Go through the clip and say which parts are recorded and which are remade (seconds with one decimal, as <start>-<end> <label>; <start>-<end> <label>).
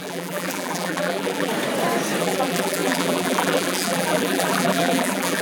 0.0-1.5 remade; 1.5-2.2 recorded; 2.2-5.4 remade